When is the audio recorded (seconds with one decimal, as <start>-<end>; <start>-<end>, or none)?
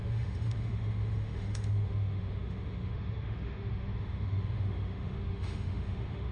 none